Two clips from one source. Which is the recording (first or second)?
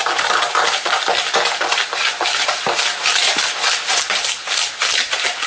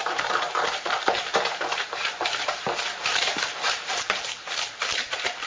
first